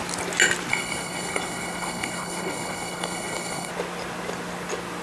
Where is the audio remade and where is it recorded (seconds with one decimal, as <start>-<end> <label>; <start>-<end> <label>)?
0.0-0.7 recorded; 0.7-3.7 remade; 3.7-5.0 recorded